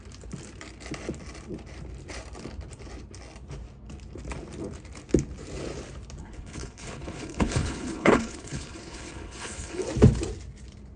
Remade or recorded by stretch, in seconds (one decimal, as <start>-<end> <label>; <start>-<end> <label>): 0.0-6.2 recorded; 6.2-9.8 remade; 9.8-11.0 recorded